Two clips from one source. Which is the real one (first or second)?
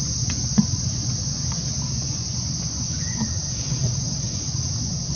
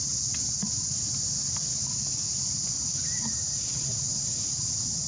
second